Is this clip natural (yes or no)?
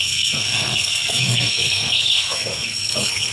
no